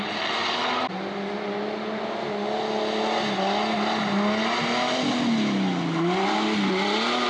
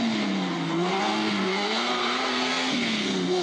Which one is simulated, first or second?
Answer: second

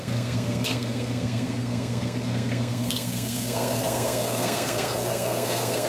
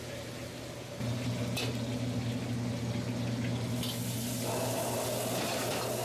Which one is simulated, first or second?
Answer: first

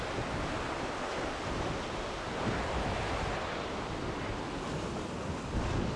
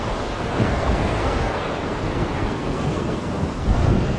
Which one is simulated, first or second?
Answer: second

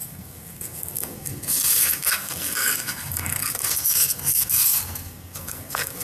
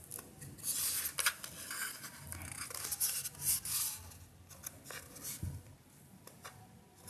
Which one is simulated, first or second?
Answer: first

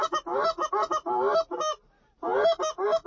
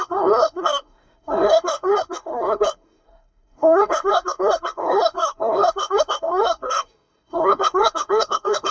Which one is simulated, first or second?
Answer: second